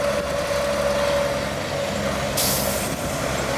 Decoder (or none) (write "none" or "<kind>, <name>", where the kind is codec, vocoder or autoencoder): none